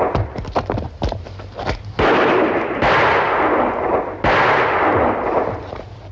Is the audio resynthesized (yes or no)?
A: no